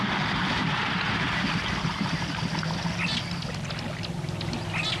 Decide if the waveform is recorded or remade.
recorded